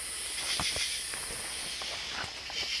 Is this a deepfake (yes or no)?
no